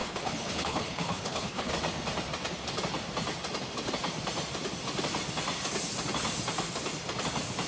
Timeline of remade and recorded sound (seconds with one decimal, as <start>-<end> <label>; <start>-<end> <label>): 0.0-1.7 remade; 1.7-7.7 recorded